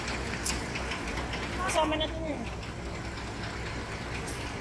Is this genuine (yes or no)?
yes